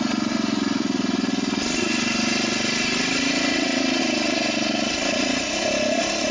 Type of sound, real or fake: real